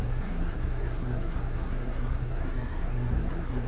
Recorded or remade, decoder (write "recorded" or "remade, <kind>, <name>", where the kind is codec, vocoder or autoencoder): remade, codec, SNAC